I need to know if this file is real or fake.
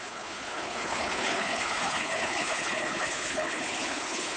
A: fake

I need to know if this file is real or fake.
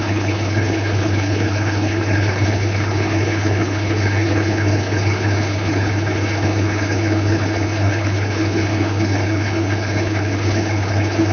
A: fake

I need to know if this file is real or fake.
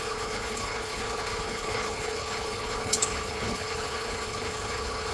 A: fake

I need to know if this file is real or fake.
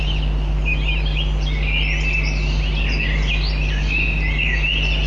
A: real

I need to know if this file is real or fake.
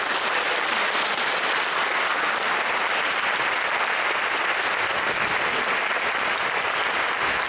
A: real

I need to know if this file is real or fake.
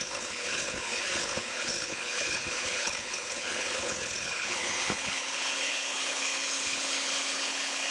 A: fake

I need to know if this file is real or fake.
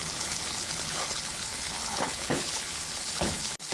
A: fake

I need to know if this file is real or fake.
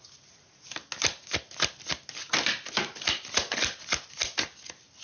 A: real